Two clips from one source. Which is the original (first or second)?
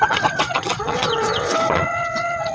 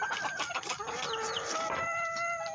second